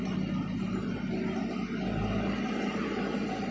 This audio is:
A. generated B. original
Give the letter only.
B